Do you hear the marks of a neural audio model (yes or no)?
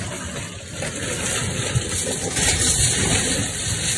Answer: no